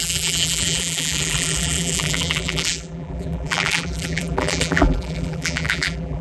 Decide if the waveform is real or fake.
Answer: fake